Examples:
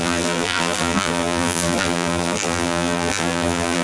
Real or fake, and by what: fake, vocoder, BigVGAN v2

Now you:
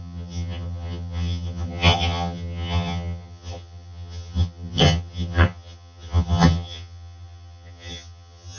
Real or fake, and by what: fake, vocoder, HiFi-GAN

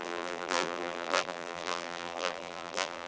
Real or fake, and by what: fake, vocoder, BigVGAN v2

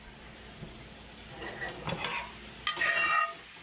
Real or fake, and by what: real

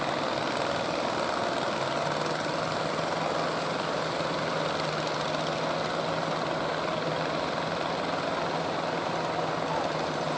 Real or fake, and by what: real